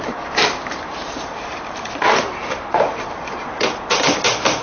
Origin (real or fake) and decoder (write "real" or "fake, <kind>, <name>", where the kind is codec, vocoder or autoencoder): fake, vocoder, BigVGAN v2